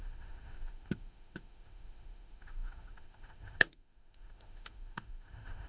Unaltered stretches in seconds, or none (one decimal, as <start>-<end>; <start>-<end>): none